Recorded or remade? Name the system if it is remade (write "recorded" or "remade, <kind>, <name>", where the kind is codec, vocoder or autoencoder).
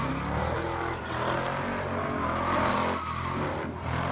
recorded